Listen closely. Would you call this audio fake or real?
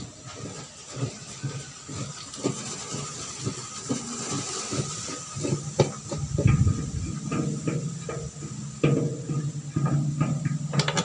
real